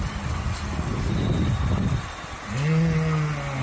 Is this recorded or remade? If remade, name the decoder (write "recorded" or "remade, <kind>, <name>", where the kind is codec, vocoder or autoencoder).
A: recorded